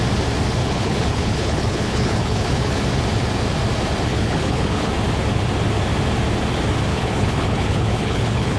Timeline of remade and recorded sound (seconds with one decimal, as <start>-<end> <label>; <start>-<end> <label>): 0.0-0.6 recorded; 0.6-2.8 remade; 2.8-4.1 recorded; 4.1-4.9 remade; 4.9-6.9 recorded; 6.9-8.6 remade